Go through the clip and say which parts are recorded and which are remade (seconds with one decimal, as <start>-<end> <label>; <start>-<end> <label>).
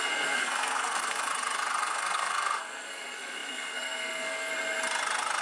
0.0-1.3 remade; 1.3-1.8 recorded; 1.8-4.5 remade; 4.5-5.4 recorded